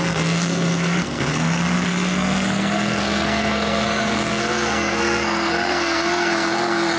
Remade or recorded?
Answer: remade